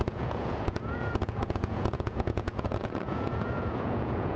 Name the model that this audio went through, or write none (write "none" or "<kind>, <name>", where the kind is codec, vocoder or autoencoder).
vocoder, Vocos